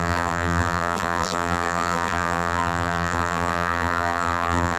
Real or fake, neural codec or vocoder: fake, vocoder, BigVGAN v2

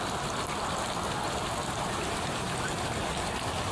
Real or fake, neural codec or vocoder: real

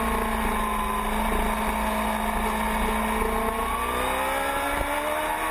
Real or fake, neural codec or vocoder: real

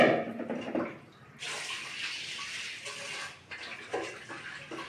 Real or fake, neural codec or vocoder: fake, vocoder, BigVGAN v2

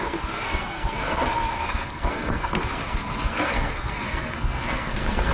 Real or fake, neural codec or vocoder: fake, codec, SNAC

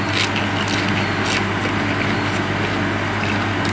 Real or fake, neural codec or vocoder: real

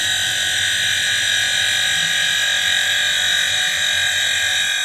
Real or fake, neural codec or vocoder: real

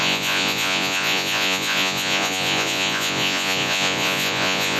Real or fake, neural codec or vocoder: fake, vocoder, Vocos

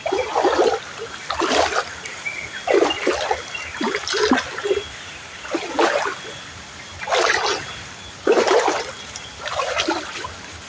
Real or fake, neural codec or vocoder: real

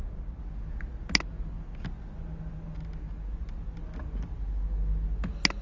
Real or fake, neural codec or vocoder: real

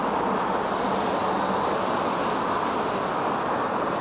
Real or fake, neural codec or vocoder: real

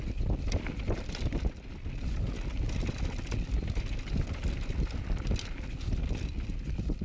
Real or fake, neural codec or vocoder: real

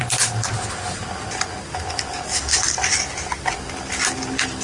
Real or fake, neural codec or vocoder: real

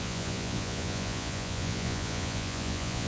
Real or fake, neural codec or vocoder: fake, vocoder, Vocos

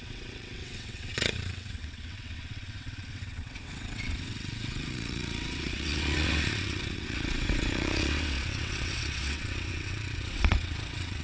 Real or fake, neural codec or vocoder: fake, vocoder, WaveNeXt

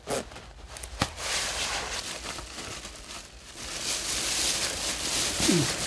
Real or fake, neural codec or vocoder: real